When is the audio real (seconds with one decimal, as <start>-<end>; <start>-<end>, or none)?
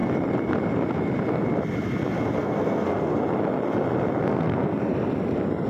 0.0-2.4; 3.2-4.2; 4.8-5.7